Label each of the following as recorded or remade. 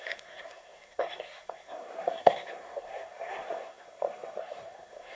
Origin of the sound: remade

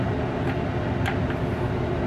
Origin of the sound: recorded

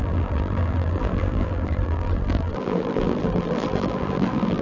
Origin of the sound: remade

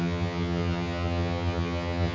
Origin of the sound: remade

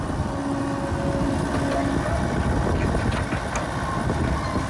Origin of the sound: recorded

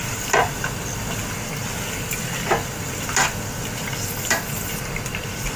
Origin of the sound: recorded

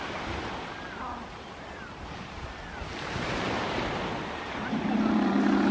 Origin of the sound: recorded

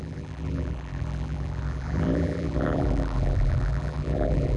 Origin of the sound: remade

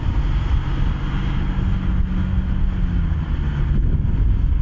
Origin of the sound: recorded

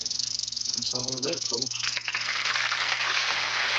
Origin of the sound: remade